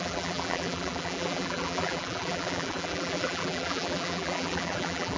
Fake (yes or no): yes